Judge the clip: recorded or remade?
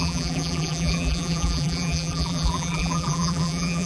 remade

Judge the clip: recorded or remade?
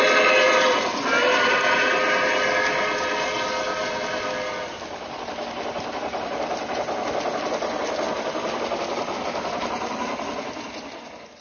recorded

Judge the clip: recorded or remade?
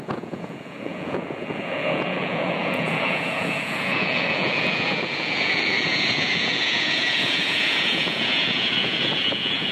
remade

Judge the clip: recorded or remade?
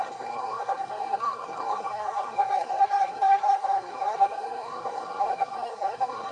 remade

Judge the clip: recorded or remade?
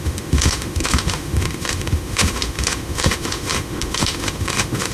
remade